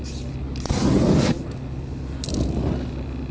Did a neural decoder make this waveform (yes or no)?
no